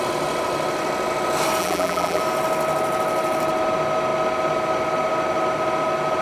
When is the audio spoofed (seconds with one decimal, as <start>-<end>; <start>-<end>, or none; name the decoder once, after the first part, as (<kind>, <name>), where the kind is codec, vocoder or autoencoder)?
1.6-2.2 (vocoder, BigVGAN v2)